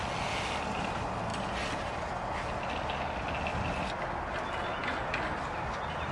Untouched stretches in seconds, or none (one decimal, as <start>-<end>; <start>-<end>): 0.0-6.1